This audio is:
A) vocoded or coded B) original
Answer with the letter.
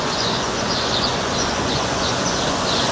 A